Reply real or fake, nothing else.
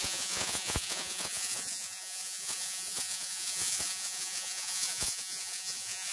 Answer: fake